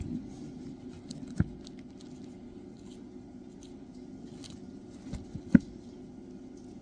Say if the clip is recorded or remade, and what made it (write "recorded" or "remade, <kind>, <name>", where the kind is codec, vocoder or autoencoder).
recorded